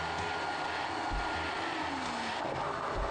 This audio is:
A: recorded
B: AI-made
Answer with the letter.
A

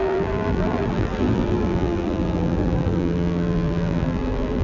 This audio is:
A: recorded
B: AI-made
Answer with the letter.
B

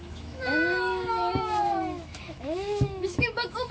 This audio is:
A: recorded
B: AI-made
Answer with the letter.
B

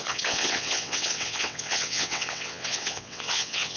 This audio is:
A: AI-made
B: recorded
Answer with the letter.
A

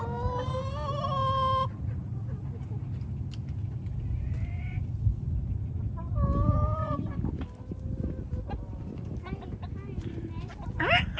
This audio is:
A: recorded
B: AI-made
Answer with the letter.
A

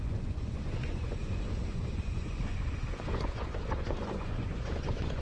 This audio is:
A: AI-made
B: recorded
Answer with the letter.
A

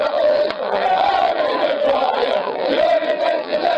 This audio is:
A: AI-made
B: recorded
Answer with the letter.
A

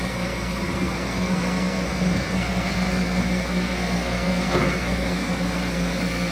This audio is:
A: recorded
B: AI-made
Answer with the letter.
B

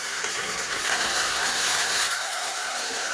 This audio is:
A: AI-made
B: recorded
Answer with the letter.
A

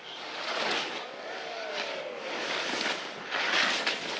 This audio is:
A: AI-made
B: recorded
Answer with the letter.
A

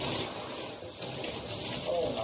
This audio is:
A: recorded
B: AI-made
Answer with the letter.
A